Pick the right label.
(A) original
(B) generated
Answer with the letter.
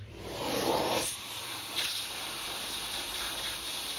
B